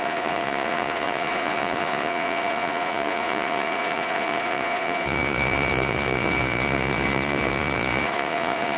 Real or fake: fake